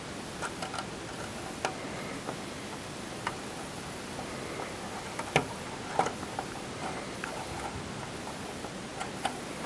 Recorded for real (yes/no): yes